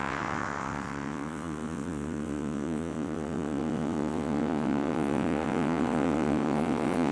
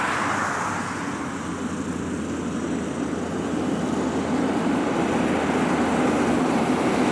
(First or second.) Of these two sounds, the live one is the second